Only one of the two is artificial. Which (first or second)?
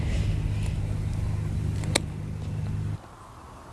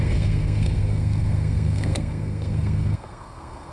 second